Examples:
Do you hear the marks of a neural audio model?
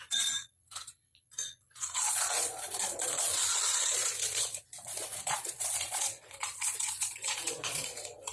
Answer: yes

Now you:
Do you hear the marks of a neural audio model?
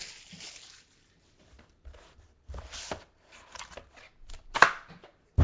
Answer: no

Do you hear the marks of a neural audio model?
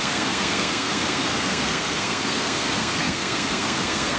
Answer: yes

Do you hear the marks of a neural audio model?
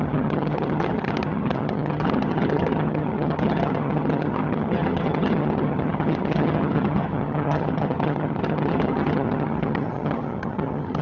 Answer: yes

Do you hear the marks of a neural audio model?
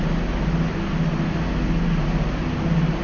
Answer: no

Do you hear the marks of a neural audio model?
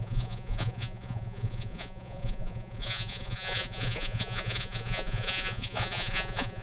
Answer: yes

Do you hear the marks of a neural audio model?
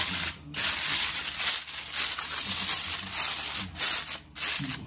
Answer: no